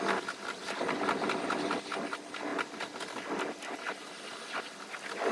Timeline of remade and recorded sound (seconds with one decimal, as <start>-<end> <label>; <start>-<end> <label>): 0.0-5.3 recorded